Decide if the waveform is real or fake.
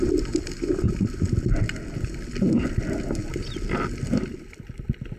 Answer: real